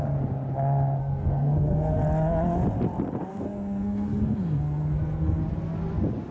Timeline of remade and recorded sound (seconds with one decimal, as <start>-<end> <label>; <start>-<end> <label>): 0.0-1.0 recorded; 1.0-2.0 remade; 2.0-3.3 recorded; 3.3-5.4 remade; 5.4-6.3 recorded